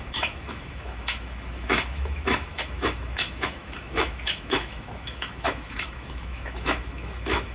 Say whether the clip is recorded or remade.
remade